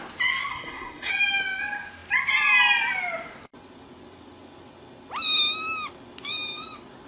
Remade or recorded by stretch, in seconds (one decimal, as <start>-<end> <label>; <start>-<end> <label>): 0.0-0.5 recorded; 0.5-1.1 remade; 1.1-7.1 recorded